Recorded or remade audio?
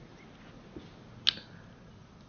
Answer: recorded